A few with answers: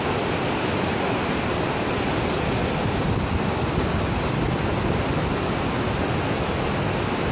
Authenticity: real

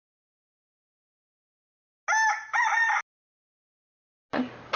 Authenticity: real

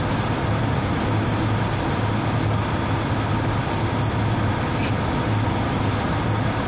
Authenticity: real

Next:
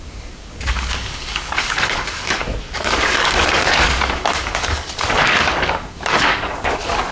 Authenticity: fake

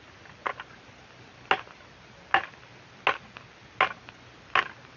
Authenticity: real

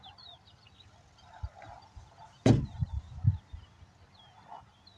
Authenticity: real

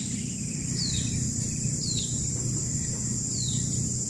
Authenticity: real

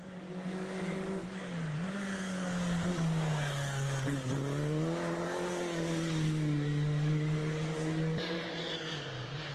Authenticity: fake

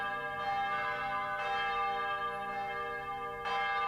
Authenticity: real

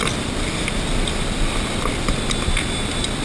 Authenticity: real